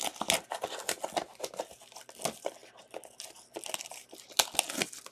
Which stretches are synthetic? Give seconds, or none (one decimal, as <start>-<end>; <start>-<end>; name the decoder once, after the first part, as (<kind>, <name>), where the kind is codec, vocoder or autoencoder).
none